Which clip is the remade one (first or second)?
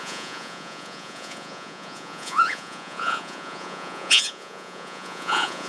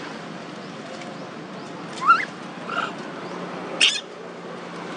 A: first